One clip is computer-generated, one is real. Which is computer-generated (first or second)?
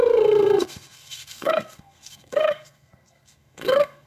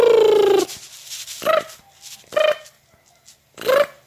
first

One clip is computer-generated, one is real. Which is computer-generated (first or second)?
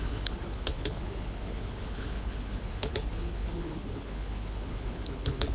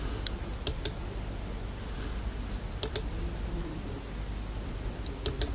first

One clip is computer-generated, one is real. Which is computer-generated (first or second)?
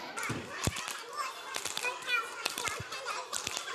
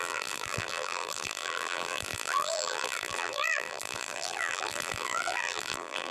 second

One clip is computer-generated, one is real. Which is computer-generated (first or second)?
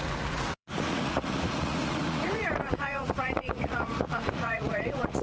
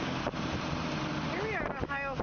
first